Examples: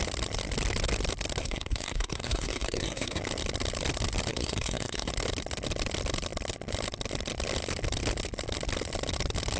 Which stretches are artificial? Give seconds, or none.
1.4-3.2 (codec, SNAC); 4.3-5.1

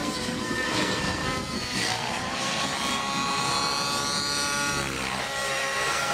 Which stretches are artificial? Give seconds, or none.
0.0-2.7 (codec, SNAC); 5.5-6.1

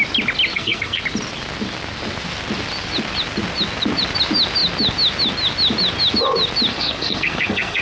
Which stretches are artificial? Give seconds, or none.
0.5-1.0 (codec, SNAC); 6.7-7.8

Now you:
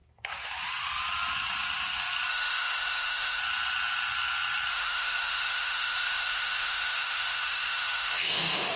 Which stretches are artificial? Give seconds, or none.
2.3-3.4 (autoencoder, DAC-VAE); 4.7-8.8